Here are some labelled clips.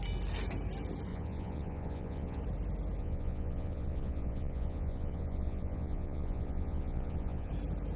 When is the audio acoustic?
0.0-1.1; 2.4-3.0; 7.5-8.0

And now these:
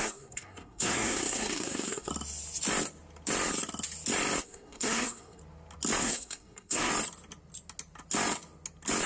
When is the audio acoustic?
2.1-4.4; 5.4-6.0; 6.9-9.1

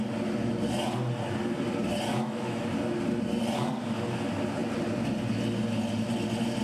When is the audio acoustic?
0.0-2.1; 2.6-6.6

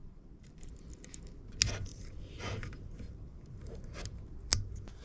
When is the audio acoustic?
0.7-1.9; 3.8-5.0

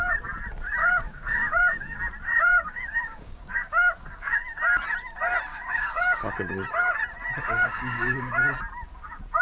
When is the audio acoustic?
0.0-0.8; 2.0-2.5; 4.4-5.5; 6.3-7.4; 8.3-9.4

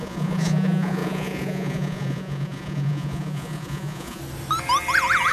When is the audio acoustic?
4.2-5.3

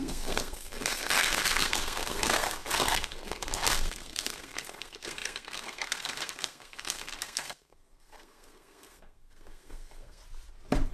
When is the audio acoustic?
10.2-10.9